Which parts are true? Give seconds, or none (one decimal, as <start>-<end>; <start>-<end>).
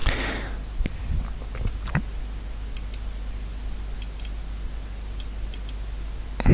0.0-6.5